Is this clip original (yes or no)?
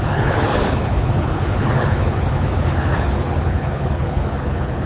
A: no